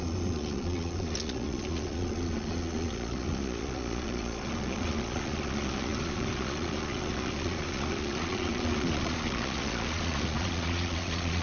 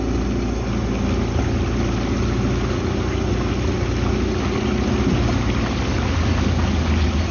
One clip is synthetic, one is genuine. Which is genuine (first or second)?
second